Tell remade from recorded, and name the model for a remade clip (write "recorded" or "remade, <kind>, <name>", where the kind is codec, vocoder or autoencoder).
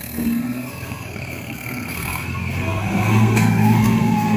remade, codec, SNAC